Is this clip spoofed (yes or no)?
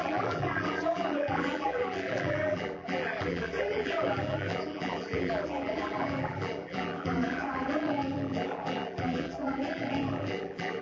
yes